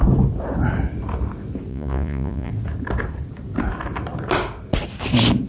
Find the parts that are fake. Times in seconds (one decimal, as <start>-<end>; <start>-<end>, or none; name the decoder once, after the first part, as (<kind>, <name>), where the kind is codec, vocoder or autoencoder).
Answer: 1.7-2.5 (vocoder, Vocos)